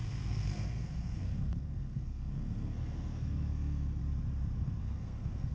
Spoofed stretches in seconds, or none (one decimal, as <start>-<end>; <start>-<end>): 0.0-4.0; 4.8-5.5